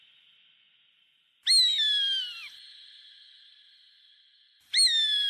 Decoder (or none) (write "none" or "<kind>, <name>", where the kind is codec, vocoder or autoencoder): none